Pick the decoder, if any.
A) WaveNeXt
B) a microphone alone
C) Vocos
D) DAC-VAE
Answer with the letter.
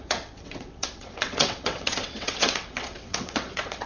A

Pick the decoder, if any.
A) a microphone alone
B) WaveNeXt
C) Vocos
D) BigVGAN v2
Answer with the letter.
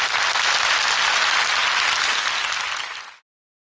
A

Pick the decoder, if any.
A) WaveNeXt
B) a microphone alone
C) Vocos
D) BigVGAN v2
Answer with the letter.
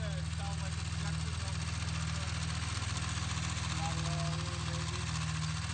B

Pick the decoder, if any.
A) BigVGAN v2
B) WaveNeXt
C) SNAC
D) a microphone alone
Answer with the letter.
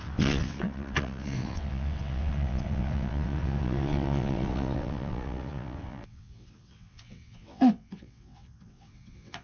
B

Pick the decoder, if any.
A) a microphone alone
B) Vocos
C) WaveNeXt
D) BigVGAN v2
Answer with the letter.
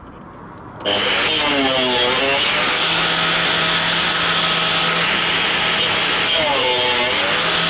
A